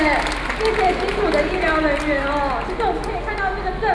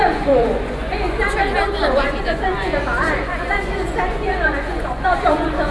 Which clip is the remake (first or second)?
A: second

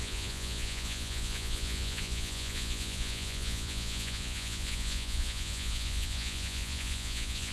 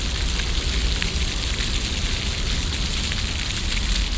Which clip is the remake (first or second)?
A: first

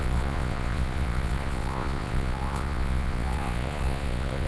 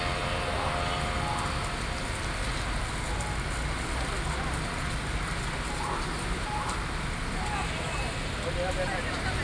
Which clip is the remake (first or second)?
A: first